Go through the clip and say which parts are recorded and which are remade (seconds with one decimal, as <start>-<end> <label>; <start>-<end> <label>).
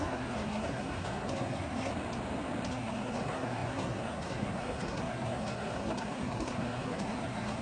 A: 0.0-1.9 remade; 1.9-2.7 recorded; 2.7-7.6 remade